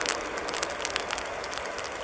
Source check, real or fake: real